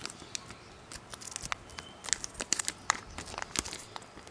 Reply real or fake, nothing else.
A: real